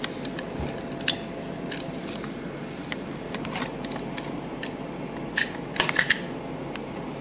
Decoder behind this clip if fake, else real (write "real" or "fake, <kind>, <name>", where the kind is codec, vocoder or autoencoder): real